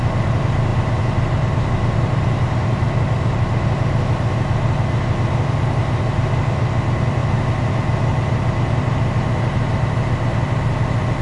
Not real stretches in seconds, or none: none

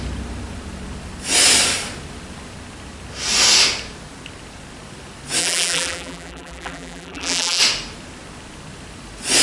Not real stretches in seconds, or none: 5.4-7.6

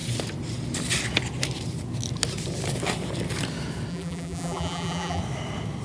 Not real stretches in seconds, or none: 3.9-5.2